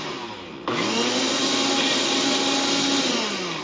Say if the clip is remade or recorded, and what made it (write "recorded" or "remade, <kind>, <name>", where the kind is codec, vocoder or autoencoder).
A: recorded